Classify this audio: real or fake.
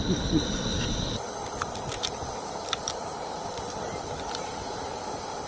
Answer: real